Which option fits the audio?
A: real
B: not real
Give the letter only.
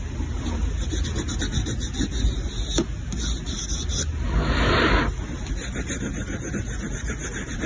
A